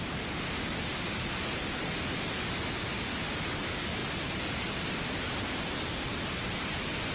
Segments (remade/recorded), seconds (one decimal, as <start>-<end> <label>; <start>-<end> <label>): 0.0-7.1 recorded